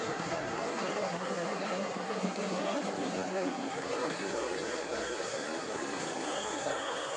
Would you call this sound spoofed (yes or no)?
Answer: yes